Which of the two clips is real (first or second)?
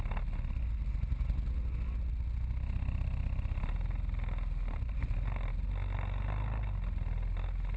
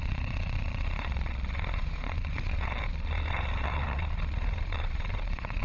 first